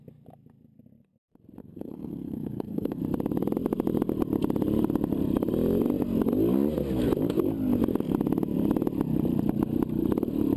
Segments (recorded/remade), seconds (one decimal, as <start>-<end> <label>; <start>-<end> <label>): 0.0-1.6 recorded; 1.6-3.0 remade; 3.0-10.6 recorded